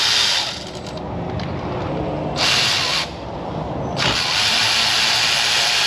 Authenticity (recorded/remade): recorded